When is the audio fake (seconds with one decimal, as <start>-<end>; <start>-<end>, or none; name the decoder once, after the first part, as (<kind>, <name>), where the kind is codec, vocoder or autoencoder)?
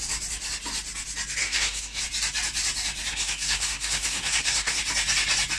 1.4-2.0 (codec, SNAC); 3.1-4.8